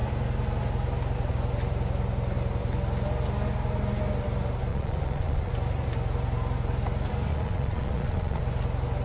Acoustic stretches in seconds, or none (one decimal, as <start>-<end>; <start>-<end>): 0.0-4.7; 5.5-7.3; 8.4-9.0